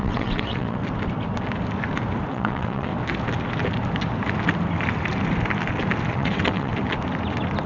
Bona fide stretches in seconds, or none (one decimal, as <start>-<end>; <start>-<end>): 0.8-2.3; 2.9-6.1; 6.7-7.7